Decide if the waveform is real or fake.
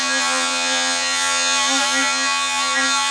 fake